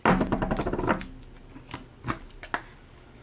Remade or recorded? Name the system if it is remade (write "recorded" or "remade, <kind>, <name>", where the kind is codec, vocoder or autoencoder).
recorded